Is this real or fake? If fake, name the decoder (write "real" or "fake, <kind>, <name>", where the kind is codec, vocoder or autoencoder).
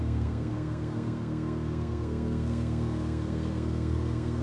fake, codec, SNAC